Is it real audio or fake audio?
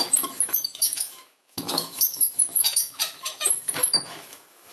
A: fake